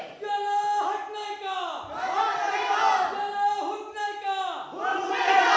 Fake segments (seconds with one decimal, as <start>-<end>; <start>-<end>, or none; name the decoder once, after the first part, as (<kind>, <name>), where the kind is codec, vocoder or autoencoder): 4.9-5.6 (vocoder, WaveNeXt)